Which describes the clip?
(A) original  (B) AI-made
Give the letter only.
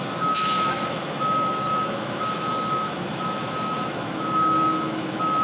B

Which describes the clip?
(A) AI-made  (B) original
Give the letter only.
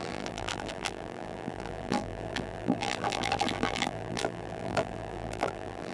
A